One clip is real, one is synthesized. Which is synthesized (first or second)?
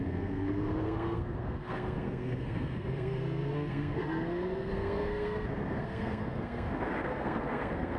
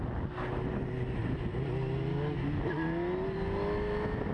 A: first